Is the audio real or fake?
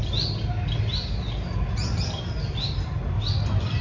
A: real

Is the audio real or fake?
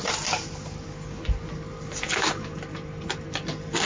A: real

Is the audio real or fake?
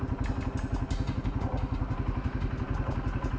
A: real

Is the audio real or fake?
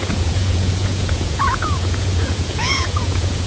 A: fake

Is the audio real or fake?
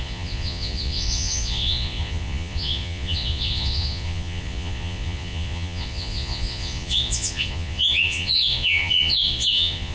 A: fake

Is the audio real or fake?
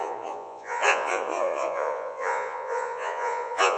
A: fake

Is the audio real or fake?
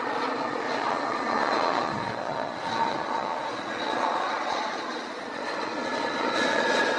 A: fake